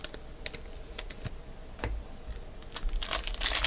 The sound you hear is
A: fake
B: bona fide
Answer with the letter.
B